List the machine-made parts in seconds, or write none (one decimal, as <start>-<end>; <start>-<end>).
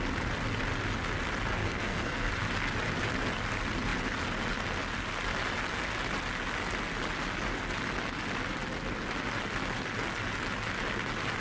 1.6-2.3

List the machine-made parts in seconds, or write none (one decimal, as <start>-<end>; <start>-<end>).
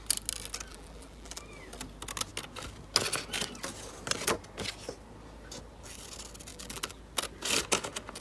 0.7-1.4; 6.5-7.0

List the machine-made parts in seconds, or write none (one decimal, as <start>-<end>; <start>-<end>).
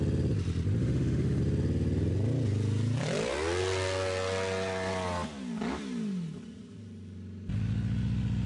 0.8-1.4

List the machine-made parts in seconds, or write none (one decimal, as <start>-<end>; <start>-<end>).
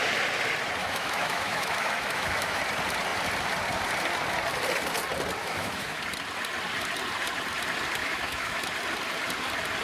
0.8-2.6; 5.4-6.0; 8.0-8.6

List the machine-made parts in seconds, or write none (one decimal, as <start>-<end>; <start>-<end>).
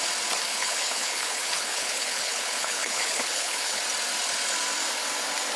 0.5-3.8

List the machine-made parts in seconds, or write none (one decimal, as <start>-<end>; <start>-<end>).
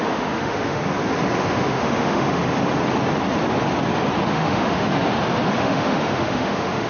0.0-0.8; 1.5-2.4; 4.3-4.9; 5.6-6.9